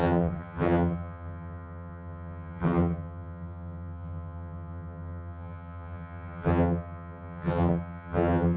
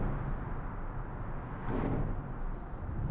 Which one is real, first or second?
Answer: second